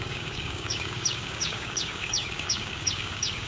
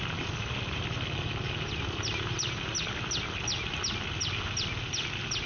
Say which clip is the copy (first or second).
first